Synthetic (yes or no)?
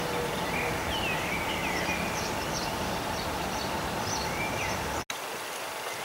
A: no